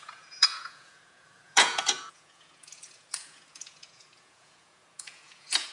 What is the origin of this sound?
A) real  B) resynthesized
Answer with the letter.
B